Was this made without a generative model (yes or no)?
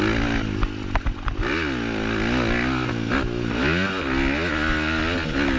yes